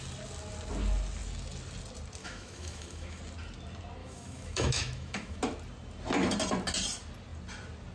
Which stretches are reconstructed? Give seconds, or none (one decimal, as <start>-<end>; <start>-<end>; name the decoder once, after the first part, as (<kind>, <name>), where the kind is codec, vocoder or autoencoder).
2.2-3.2 (autoencoder, DAC-VAE); 4.0-5.4